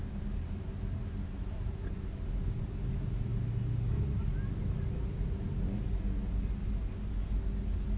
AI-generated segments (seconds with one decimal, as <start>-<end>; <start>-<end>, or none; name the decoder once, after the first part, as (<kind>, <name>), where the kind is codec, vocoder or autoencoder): none